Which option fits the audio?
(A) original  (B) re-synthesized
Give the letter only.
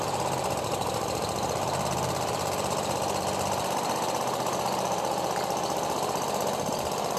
B